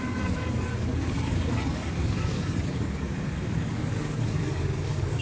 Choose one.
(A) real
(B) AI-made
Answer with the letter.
B